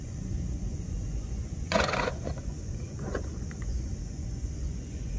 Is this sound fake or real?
fake